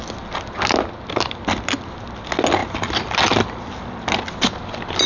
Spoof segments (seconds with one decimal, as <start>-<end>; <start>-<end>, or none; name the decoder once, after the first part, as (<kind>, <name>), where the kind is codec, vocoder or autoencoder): none